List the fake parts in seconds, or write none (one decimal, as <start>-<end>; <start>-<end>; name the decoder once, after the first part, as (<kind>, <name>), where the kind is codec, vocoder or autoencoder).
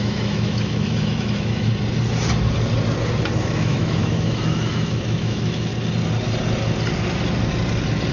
0.0-1.7 (autoencoder, DAC-VAE); 3.4-5.7